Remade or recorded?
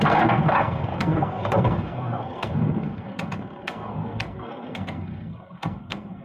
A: remade